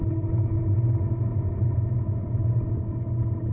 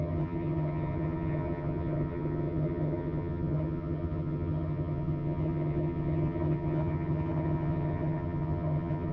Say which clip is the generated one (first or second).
second